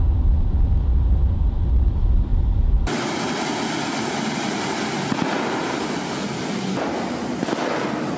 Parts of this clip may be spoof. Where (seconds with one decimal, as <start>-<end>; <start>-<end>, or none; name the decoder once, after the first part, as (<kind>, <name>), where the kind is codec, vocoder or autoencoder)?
none